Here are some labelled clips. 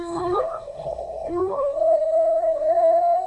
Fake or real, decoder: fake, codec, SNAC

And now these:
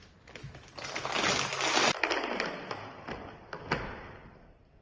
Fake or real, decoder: real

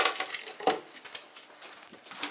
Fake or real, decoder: real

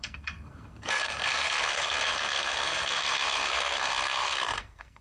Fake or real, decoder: fake, codec, SNAC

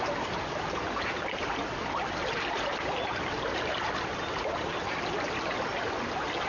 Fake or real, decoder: real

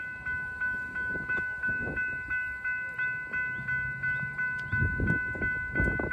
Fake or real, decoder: real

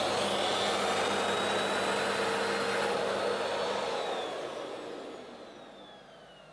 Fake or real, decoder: real